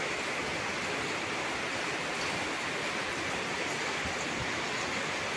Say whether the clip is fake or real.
real